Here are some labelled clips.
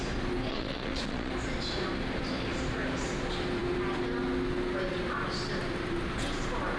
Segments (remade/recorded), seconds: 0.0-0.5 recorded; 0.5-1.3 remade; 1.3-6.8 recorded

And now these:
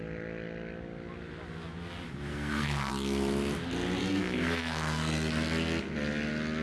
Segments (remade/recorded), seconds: 0.0-2.3 recorded; 2.3-2.9 remade; 2.9-4.0 recorded; 4.0-5.3 remade; 5.3-6.6 recorded